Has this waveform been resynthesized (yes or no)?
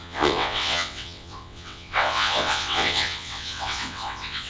yes